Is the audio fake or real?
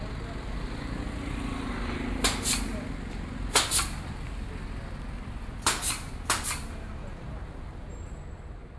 real